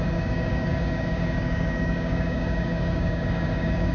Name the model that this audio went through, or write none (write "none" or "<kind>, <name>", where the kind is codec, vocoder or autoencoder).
codec, DAC